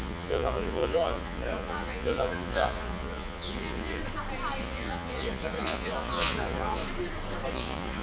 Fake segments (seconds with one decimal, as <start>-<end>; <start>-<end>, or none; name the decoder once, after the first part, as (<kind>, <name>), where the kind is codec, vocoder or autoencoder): 0.0-4.0 (vocoder, Vocos); 4.6-6.8; 7.5-8.0